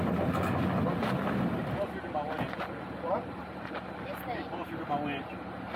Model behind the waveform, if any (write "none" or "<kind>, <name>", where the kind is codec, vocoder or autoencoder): none